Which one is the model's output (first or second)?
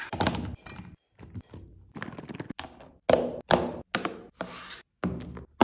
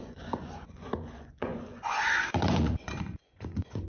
second